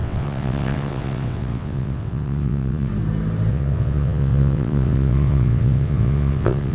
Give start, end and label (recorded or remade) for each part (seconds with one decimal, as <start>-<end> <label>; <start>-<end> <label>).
0.0-2.9 remade; 2.9-3.5 recorded; 3.5-6.7 remade